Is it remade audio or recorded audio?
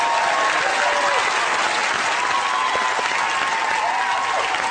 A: recorded